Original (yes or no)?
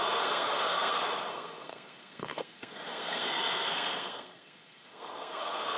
no